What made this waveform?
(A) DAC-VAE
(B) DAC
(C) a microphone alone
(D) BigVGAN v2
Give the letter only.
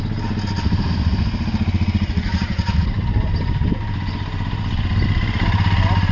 C